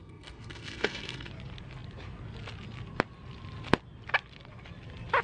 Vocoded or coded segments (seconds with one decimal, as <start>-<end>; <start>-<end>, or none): 0.0-1.3